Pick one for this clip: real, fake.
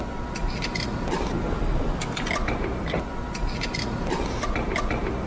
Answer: real